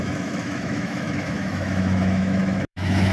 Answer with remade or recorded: remade